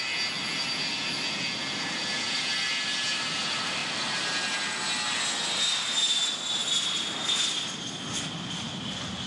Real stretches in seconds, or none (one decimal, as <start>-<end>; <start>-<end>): 0.0-9.3